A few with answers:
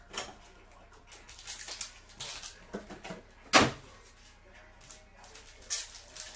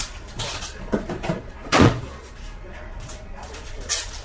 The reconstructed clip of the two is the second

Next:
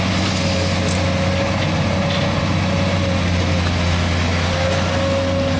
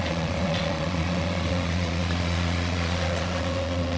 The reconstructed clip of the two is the second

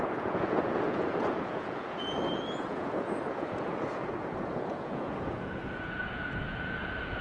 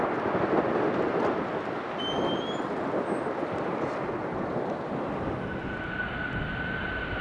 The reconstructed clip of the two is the first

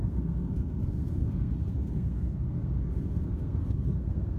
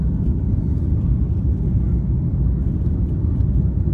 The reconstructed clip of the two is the first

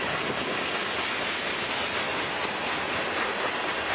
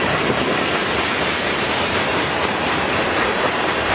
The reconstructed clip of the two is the second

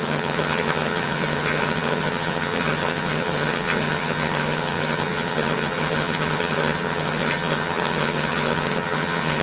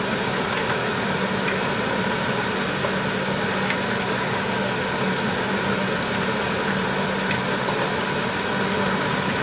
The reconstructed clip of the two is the first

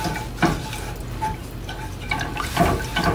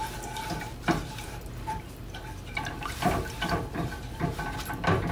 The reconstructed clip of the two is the second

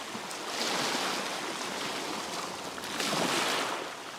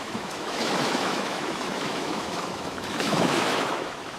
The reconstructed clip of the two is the second